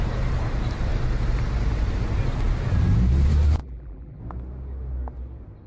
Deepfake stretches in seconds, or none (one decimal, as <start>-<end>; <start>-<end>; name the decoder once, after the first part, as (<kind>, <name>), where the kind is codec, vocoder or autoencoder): 3.6-4.2 (vocoder, BigVGAN v2)